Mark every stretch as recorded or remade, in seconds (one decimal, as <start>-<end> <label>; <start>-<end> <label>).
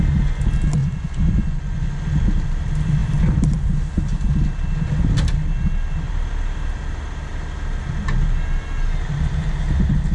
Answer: 0.0-0.8 recorded; 0.8-2.0 remade; 2.0-10.1 recorded